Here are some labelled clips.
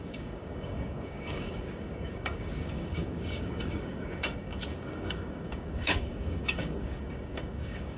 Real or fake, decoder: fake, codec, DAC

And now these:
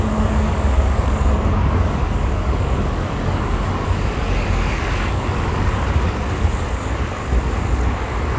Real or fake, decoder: fake, codec, DAC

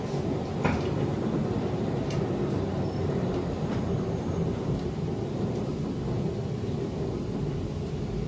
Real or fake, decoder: real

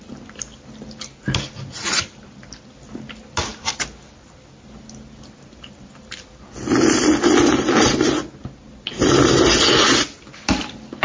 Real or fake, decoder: real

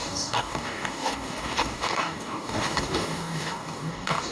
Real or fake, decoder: fake, codec, DAC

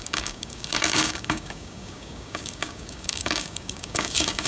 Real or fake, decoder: fake, codec, DAC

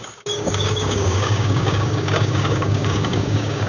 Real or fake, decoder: fake, codec, DAC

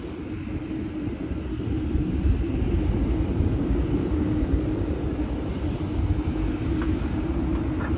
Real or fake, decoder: real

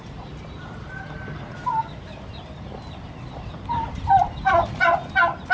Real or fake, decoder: real